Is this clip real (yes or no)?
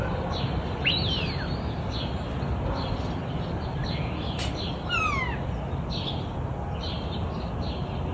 yes